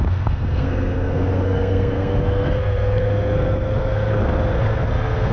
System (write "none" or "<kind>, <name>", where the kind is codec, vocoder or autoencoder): codec, SNAC